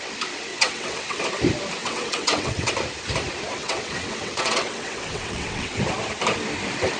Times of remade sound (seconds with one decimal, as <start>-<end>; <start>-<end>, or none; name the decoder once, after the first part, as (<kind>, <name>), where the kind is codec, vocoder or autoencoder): 0.5-1.2 (vocoder, WaveNeXt); 1.8-2.7; 3.5-5.8